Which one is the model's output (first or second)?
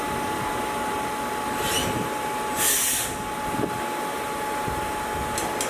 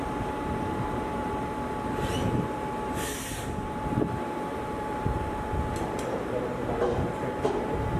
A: second